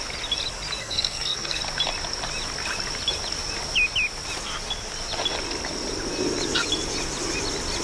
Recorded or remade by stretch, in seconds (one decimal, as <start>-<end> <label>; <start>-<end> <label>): 0.0-0.8 recorded; 0.8-1.6 remade; 1.6-7.8 recorded